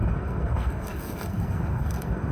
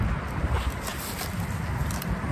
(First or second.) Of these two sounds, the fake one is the first